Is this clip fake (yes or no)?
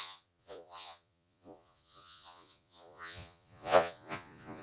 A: yes